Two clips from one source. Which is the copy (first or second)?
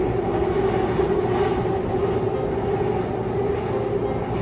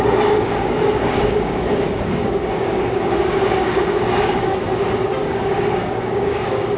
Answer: second